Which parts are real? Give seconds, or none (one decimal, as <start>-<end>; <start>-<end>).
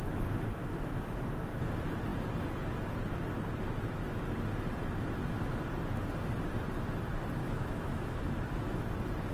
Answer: 0.0-0.6; 1.2-7.4; 8.8-9.3